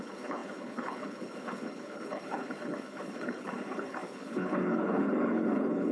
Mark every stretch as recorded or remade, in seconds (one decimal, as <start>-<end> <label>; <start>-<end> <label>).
0.0-5.9 remade